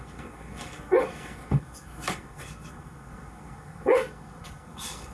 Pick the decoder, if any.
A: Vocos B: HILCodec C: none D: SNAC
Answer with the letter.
D